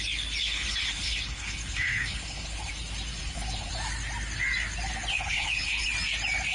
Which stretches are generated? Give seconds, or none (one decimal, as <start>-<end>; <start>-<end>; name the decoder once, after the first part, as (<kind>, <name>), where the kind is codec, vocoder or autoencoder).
0.4-2.7 (codec, HILCodec); 3.2-3.7; 5.1-5.9